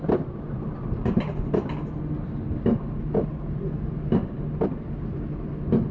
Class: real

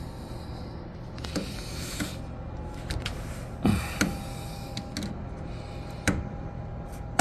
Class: real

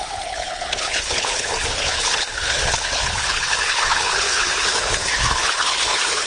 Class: fake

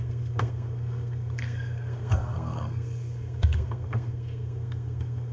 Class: fake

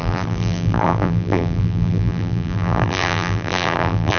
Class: fake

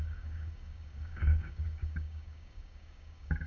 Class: fake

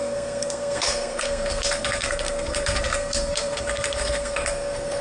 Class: fake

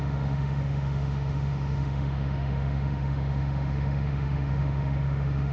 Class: fake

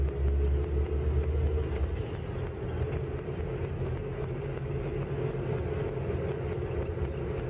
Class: real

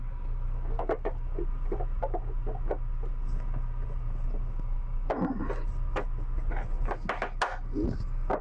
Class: real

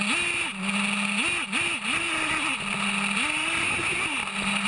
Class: real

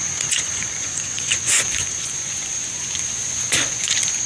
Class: fake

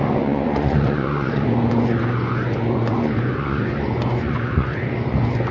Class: fake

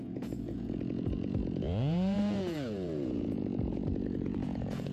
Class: fake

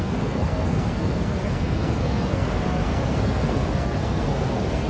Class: fake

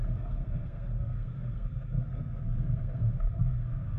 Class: fake